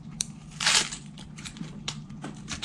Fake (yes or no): yes